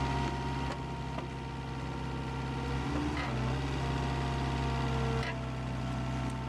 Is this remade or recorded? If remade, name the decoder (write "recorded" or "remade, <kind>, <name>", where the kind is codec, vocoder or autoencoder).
recorded